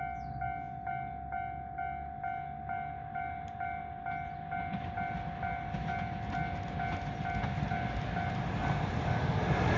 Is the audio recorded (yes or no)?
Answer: yes